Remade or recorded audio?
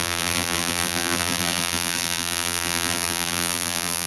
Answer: remade